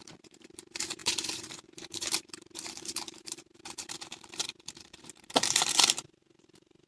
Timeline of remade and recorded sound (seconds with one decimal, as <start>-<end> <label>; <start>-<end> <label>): 0.0-6.9 remade